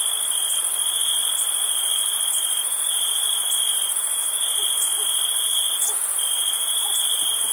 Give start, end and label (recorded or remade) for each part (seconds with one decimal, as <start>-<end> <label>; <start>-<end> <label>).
0.0-7.5 recorded